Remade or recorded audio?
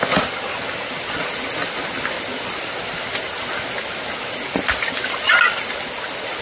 recorded